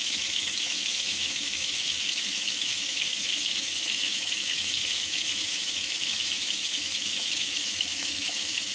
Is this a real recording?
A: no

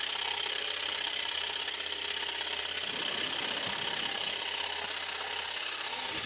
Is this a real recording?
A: yes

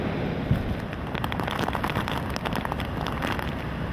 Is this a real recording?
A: yes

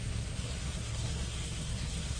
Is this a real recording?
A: no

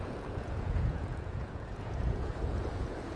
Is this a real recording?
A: no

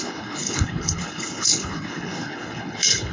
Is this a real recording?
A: no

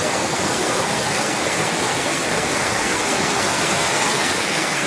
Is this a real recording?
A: no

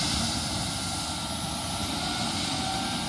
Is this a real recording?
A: yes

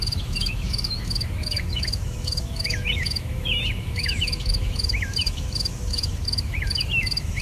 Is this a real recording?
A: no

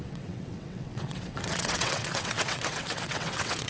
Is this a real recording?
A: no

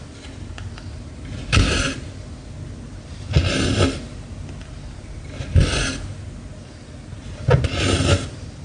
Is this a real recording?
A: yes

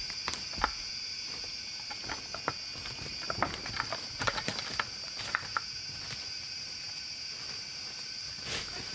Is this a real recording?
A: yes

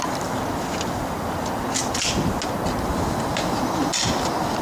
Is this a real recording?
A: yes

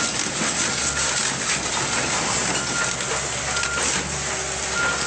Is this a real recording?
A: yes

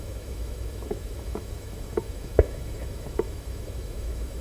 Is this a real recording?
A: no